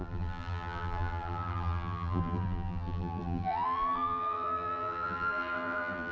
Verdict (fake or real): fake